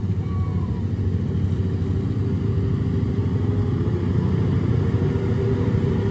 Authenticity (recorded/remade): recorded